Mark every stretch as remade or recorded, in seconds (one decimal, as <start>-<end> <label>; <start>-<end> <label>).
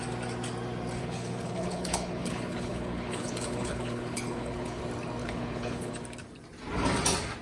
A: 0.0-1.0 recorded; 1.0-4.8 remade; 4.8-5.2 recorded; 5.2-5.9 remade; 5.9-7.4 recorded